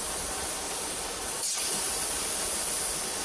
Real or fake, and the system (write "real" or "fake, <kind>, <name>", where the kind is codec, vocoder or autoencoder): real